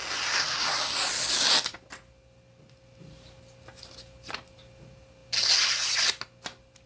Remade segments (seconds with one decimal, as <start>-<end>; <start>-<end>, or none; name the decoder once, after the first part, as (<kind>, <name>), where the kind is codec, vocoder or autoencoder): none